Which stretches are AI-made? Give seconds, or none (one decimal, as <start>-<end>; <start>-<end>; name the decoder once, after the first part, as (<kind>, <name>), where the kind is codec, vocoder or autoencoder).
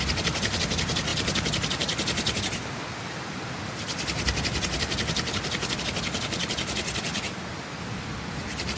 none